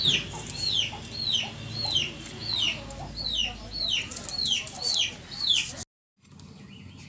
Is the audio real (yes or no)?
yes